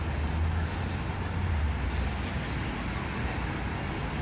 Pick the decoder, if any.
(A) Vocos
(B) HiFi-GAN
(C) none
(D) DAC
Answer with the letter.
C